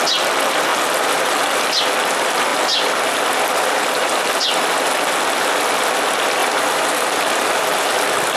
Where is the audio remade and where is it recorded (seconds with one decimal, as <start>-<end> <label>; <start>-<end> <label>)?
0.0-0.7 recorded; 0.7-1.8 remade; 1.8-6.4 recorded; 6.4-7.2 remade; 7.2-8.4 recorded